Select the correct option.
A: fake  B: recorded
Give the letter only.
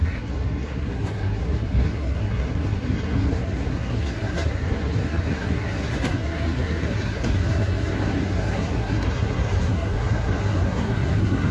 A